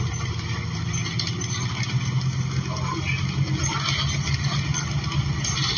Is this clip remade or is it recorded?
recorded